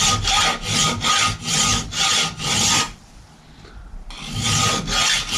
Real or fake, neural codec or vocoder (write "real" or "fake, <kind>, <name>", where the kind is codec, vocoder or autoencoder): real